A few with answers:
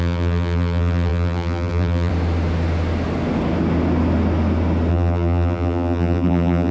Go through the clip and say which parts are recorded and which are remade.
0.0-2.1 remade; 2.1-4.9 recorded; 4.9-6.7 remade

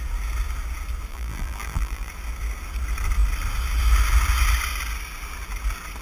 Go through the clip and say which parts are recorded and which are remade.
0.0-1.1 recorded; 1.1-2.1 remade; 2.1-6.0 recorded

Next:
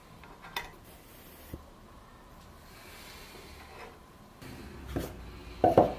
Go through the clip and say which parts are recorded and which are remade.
0.0-6.0 recorded

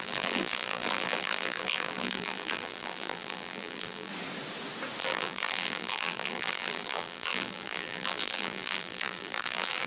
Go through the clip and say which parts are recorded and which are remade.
0.0-4.1 remade; 4.1-5.0 recorded; 5.0-9.9 remade